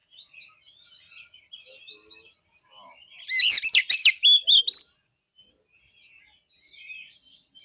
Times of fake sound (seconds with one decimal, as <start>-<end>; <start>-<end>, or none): 4.0-4.6